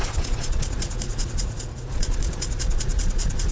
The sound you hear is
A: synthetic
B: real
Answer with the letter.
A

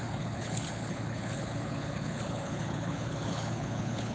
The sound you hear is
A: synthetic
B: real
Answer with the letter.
A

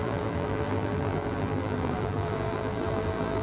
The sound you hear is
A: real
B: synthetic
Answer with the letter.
B